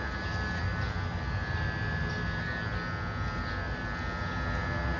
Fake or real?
real